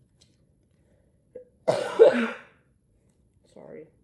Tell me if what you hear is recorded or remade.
remade